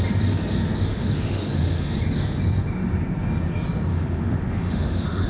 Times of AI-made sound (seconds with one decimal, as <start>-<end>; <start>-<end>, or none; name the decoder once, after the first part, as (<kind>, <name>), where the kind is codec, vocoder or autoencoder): 0.9-2.0 (autoencoder, DAC-VAE); 3.9-5.3